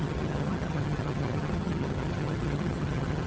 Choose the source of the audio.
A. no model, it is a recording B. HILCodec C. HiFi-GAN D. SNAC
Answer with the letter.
C